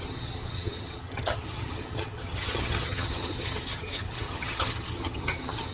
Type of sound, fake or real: fake